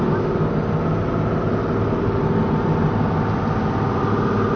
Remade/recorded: recorded